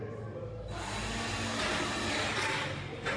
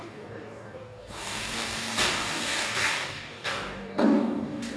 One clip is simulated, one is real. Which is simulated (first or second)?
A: second